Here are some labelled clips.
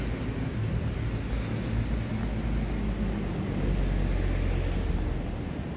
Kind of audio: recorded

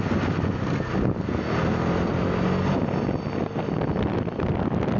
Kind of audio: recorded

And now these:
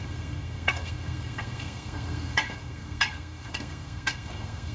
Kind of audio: remade